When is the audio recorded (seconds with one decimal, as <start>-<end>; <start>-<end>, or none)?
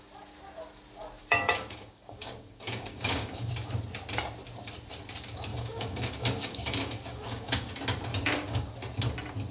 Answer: 0.0-1.2; 3.5-5.5; 7.7-8.1; 8.7-9.5